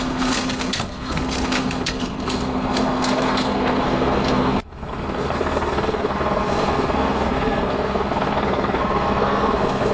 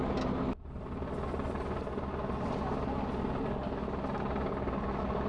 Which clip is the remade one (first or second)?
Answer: first